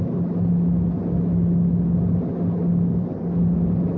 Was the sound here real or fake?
real